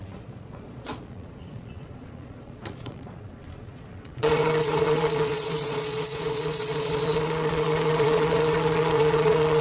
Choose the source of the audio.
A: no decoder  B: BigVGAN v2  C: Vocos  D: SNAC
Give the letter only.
C